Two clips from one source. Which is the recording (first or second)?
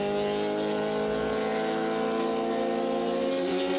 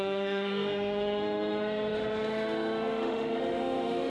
first